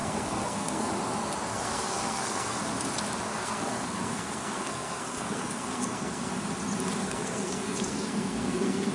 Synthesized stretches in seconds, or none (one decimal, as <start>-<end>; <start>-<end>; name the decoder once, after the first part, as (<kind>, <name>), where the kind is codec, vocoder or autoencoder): 0.0-0.9 (codec, SNAC); 1.5-2.6; 3.3-6.3; 7.0-8.9